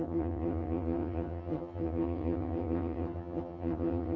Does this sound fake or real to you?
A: fake